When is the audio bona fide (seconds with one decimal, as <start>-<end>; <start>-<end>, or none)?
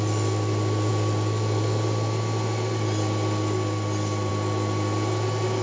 0.0-5.6